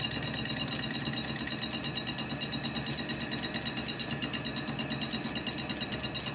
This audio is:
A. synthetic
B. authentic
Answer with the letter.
B